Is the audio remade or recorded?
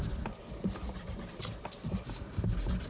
recorded